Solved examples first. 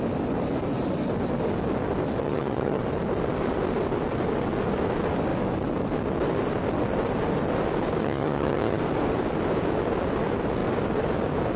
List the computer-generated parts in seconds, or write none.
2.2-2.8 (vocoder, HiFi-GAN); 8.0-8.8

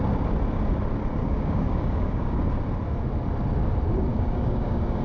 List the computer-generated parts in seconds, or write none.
1.2-2.5 (codec, DAC); 4.1-5.0

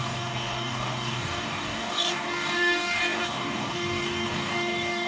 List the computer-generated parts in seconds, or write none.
0.0-5.1 (codec, DAC)